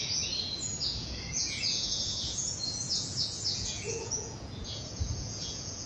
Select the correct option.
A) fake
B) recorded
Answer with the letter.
A